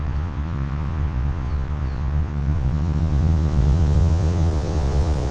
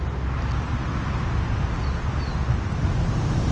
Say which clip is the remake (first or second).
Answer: first